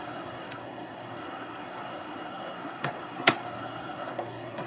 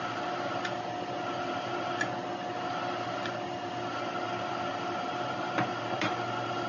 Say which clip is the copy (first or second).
first